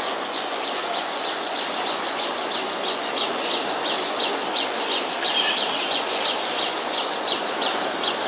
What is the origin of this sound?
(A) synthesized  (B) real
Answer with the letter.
A